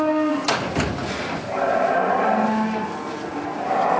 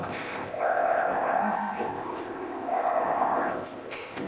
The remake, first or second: second